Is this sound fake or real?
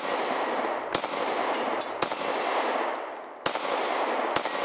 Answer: real